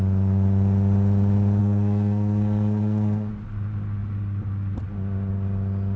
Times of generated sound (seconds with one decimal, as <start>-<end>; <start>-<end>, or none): 1.6-3.3